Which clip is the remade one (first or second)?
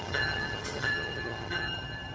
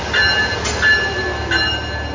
first